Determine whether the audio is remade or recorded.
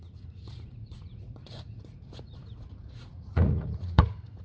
remade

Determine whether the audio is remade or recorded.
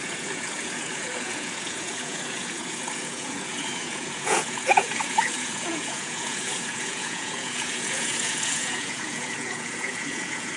remade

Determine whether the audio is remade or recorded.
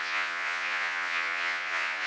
remade